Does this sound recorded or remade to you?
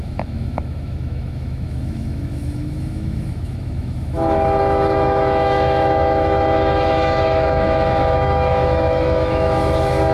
remade